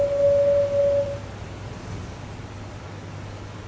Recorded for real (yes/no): yes